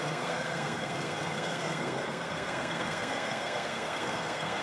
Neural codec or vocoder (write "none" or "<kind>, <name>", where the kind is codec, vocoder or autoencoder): codec, SNAC